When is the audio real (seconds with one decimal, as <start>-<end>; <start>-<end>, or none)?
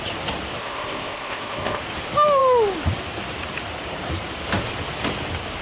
0.0-0.6; 1.8-5.6